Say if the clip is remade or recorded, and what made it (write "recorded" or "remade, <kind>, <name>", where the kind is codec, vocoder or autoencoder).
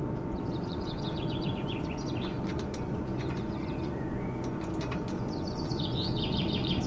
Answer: remade, vocoder, Vocos